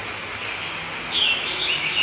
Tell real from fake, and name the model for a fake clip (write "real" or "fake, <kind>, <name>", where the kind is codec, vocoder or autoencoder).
real